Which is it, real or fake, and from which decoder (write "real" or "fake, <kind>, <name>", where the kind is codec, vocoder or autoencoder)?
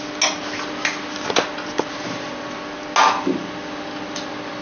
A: real